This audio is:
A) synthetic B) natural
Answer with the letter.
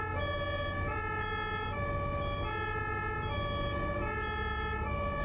B